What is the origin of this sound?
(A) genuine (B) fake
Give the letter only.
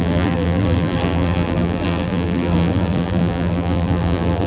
B